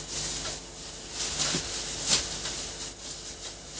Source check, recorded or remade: recorded